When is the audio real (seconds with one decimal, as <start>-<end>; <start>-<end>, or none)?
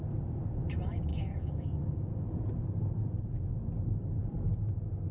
0.0-1.1; 3.6-4.2